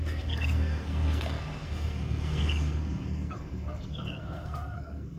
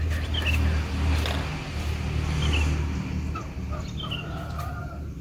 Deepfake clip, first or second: first